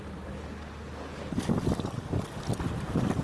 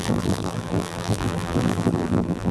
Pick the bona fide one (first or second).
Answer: first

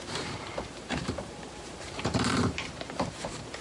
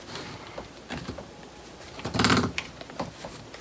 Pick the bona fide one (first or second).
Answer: second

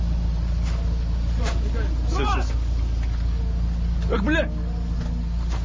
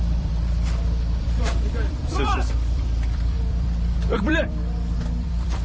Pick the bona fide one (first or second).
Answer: first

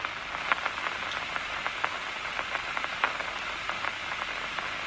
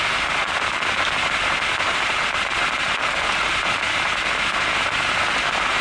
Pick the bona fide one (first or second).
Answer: first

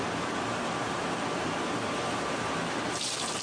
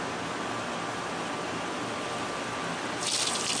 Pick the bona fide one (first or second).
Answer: second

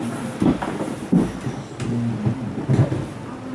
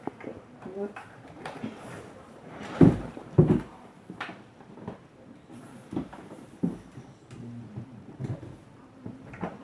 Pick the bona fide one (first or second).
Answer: first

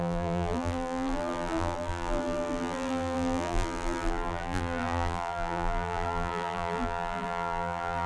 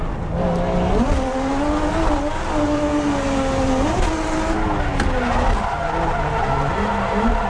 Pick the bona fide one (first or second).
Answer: second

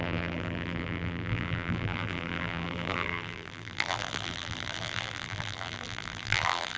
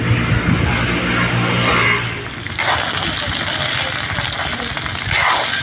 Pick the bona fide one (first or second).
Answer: second